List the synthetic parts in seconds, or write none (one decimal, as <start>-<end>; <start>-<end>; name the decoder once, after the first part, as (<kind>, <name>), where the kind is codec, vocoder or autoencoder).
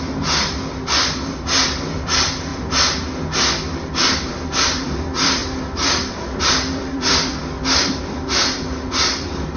0.0-2.5 (vocoder, BigVGAN v2); 3.8-7.3; 7.9-9.6